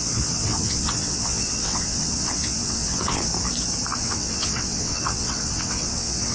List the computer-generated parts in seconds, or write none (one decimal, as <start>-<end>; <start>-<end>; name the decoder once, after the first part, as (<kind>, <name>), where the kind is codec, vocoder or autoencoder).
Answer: 0.0-3.3 (vocoder, WaveNeXt); 4.0-6.3